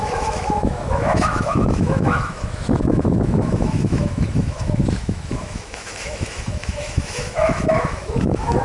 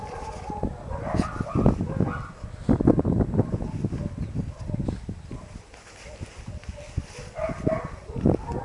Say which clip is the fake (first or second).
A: first